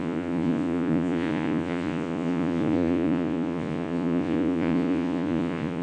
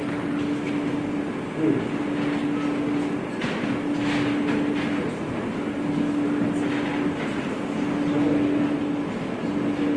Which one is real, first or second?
second